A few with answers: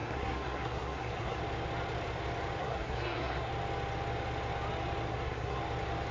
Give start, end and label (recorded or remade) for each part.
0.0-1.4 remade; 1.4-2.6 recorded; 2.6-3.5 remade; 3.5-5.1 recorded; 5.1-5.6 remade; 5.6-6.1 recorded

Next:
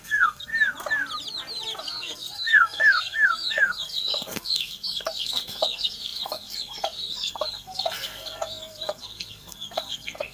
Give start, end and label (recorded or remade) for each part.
0.0-0.5 remade; 0.5-1.8 recorded; 1.8-10.3 remade